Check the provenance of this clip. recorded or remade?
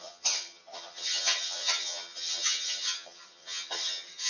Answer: remade